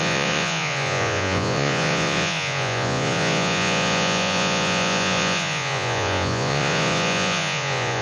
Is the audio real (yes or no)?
no